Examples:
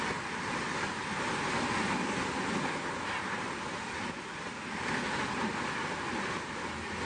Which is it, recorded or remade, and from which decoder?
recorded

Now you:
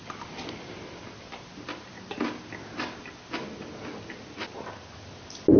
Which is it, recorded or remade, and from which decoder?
recorded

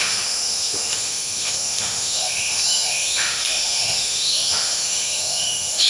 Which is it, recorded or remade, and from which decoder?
remade, autoencoder, DAC-VAE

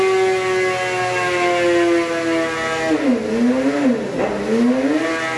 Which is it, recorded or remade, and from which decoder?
recorded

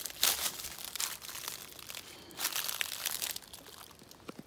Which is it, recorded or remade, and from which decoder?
recorded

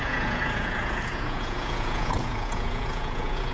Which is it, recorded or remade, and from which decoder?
remade, vocoder, Vocos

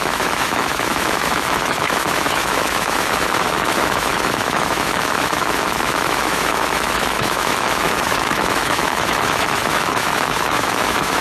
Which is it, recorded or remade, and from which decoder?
remade, autoencoder, DAC-VAE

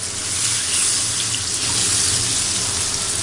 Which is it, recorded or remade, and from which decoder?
recorded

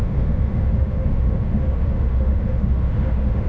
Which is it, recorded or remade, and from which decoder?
remade, autoencoder, DAC-VAE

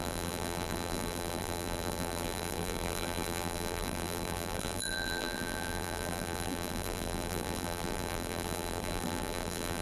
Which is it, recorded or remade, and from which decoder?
remade, vocoder, BigVGAN v2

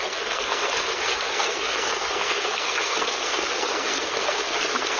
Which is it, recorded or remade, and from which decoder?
remade, codec, SNAC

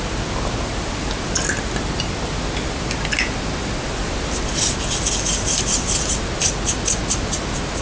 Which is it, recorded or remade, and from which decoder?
recorded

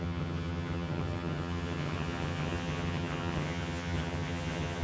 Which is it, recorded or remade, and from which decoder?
remade, vocoder, HiFi-GAN